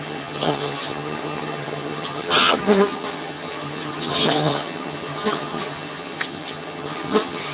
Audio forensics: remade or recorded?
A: remade